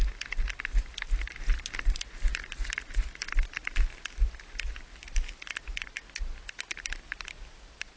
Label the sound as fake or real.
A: real